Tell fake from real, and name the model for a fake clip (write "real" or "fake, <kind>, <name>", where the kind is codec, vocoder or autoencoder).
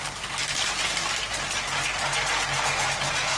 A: real